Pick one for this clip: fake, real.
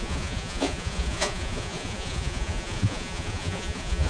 fake